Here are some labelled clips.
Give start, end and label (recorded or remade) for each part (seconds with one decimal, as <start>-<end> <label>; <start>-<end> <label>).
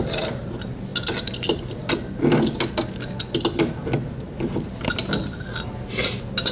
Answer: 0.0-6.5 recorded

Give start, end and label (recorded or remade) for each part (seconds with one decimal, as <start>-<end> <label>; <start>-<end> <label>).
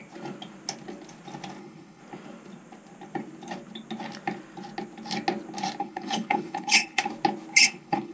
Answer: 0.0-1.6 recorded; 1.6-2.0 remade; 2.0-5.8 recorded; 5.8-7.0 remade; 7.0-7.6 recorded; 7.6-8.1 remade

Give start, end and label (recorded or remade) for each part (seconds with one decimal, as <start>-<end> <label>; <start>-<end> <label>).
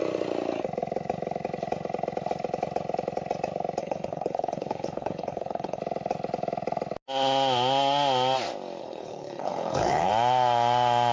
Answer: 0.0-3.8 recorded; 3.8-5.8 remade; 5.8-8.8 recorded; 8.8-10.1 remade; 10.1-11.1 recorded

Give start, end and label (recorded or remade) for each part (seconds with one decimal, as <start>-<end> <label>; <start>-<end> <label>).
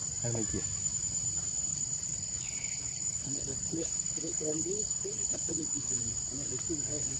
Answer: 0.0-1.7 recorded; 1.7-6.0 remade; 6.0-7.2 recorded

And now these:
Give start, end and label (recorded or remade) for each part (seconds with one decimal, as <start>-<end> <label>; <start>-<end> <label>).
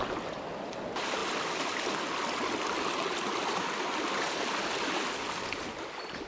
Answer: 0.0-6.3 recorded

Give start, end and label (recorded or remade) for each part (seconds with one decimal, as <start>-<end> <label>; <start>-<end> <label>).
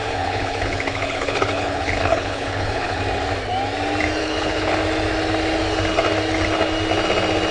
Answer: 0.0-3.0 remade; 3.0-4.2 recorded; 4.2-4.7 remade; 4.7-7.5 recorded